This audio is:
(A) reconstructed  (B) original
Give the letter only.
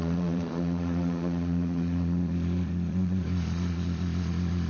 A